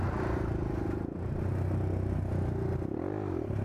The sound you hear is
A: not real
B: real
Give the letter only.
B